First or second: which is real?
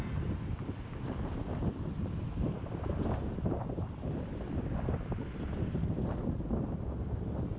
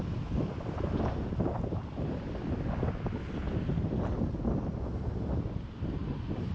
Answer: second